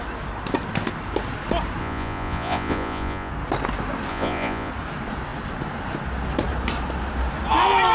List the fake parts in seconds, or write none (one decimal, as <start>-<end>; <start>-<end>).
1.8-3.3; 4.1-4.7